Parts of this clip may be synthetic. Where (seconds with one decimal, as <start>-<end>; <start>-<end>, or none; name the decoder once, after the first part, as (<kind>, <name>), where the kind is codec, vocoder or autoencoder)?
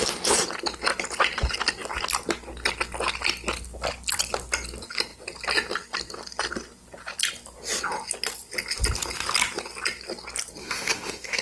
10.6-11.4 (autoencoder, DAC-VAE)